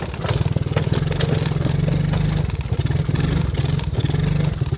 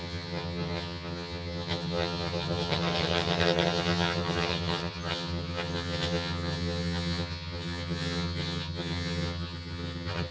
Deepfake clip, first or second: second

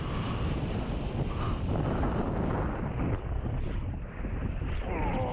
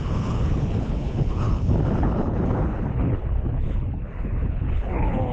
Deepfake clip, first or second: second